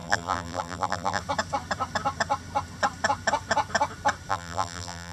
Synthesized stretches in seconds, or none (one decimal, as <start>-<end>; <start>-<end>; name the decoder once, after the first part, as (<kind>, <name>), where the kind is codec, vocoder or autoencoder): 0.0-1.2 (vocoder, BigVGAN v2); 4.3-5.1

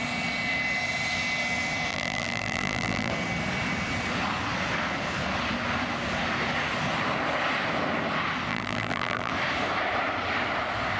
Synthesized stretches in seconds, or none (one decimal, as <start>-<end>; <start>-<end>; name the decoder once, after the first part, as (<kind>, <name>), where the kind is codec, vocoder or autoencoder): 1.9-3.1 (vocoder, BigVGAN v2); 8.5-9.3

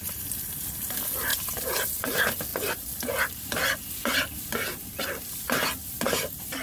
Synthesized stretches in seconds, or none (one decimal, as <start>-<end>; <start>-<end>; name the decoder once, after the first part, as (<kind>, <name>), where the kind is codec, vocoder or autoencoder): 0.0-2.5 (vocoder, BigVGAN v2); 5.0-6.6